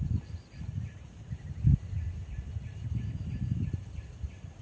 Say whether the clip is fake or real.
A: real